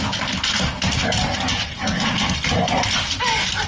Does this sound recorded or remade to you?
recorded